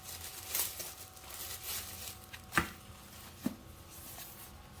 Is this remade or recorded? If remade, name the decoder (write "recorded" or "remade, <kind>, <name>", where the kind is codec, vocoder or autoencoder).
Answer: recorded